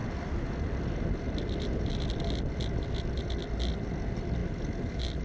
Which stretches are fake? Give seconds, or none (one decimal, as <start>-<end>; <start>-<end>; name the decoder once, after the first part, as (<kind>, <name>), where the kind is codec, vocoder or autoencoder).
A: none